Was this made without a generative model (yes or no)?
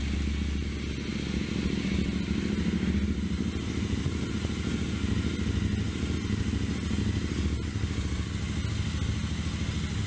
yes